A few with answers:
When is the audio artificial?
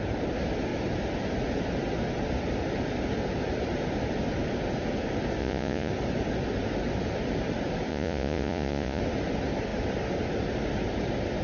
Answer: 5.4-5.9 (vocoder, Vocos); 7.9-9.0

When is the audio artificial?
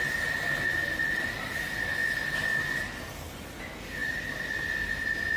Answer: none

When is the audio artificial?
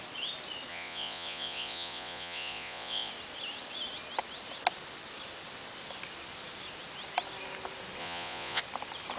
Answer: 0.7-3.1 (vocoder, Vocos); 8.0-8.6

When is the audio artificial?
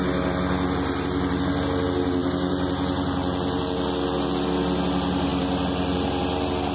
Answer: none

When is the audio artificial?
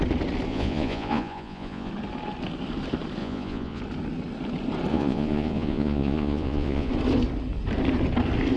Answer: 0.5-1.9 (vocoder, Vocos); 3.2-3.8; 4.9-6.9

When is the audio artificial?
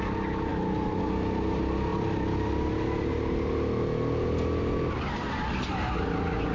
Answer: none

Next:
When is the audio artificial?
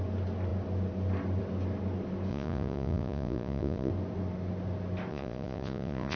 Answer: 2.3-3.9 (vocoder, Vocos); 5.1-6.2